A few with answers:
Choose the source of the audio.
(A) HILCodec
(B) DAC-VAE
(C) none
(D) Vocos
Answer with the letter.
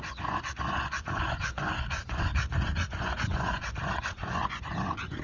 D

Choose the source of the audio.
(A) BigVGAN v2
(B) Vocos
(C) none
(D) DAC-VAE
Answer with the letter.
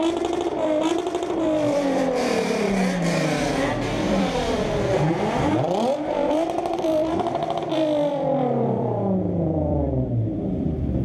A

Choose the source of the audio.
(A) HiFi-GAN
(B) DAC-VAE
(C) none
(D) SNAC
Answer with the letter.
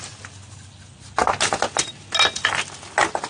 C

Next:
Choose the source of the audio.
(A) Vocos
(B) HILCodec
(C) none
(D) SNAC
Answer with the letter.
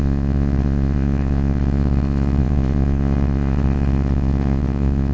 A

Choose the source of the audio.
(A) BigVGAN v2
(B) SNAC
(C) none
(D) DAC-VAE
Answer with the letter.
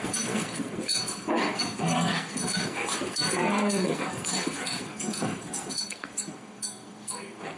B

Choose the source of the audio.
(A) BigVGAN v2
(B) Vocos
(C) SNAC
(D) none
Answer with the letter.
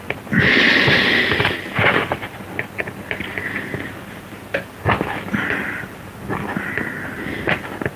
D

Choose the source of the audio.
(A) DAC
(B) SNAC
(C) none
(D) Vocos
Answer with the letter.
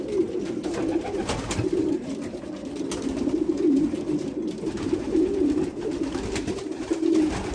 C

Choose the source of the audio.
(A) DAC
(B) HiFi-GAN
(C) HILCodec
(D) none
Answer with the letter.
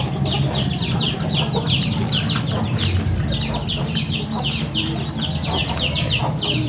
D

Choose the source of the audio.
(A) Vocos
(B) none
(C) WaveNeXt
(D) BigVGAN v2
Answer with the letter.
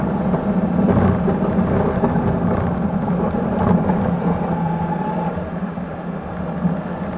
B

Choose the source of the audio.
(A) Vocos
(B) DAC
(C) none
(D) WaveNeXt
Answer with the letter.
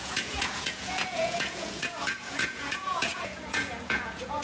A